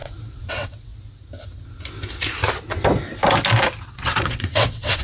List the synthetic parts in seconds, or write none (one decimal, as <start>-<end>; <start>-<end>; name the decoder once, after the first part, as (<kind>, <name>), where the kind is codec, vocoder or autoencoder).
0.0-0.9 (vocoder, WaveNeXt); 3.9-5.0